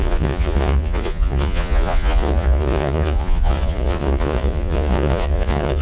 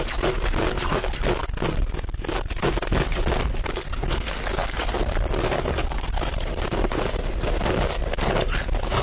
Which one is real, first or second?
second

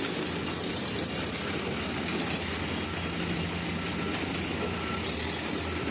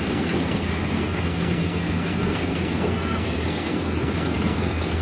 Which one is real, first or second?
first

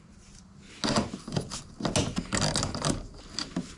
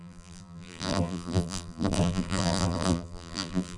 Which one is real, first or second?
first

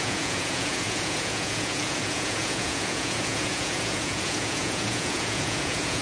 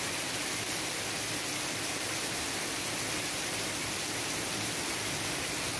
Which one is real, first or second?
second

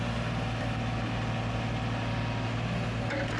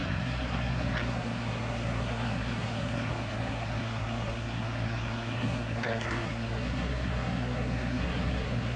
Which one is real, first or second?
first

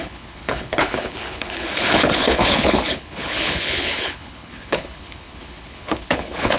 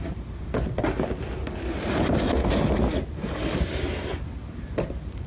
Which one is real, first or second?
second